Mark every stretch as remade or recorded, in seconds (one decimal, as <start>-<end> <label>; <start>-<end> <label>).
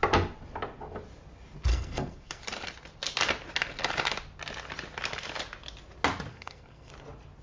0.0-1.7 recorded; 1.7-2.4 remade; 2.4-6.3 recorded; 6.3-6.9 remade; 6.9-7.4 recorded